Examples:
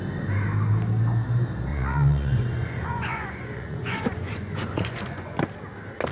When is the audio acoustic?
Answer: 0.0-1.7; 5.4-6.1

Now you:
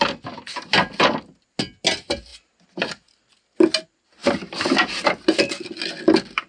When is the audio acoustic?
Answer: 0.0-6.5

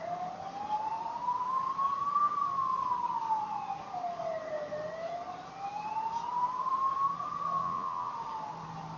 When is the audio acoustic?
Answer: 0.0-7.6; 8.1-9.0